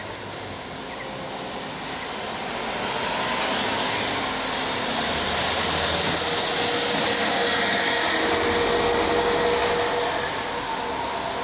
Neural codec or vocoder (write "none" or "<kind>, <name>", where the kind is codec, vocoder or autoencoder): none